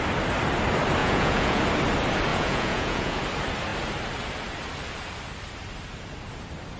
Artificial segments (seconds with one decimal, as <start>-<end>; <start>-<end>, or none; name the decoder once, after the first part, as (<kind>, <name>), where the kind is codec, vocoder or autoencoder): 1.0-1.6 (vocoder, Vocos); 2.3-3.2